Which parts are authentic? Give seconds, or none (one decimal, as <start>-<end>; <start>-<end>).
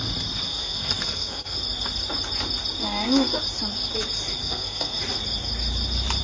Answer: 0.0-0.5; 1.6-2.8; 3.4-4.4; 5.0-6.2